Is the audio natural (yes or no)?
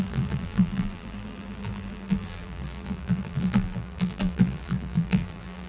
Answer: no